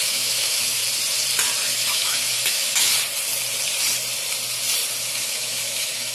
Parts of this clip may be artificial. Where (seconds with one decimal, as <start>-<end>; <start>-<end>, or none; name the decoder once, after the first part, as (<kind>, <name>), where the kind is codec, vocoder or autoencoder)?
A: 0.0-0.8 (autoencoder, DAC-VAE); 1.7-2.9; 5.0-6.1